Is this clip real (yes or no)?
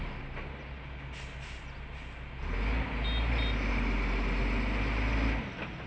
yes